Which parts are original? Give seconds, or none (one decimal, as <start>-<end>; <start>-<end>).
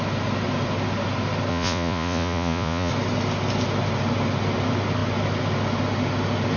0.0-1.5; 2.9-6.6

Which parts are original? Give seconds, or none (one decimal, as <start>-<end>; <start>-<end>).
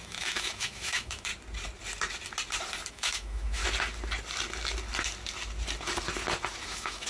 1.3-2.9; 3.6-6.6